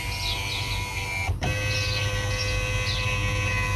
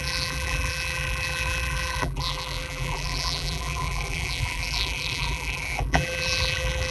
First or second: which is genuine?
first